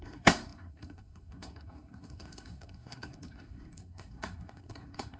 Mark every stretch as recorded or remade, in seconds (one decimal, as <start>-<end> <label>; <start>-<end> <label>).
0.0-5.2 remade